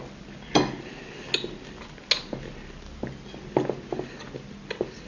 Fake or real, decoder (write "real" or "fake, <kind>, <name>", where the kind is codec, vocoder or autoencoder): real